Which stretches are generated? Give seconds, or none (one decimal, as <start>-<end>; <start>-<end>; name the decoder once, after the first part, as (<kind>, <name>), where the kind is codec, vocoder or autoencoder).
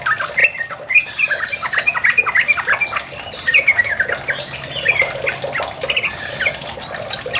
none